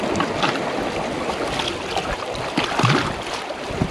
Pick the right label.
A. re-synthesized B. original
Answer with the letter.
B